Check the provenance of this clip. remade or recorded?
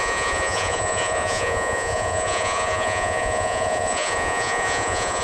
remade